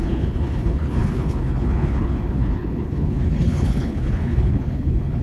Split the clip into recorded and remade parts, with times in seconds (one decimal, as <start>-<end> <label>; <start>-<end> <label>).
0.0-5.2 remade